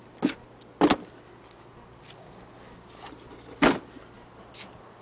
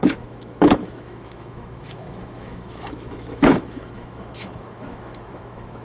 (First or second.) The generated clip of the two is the second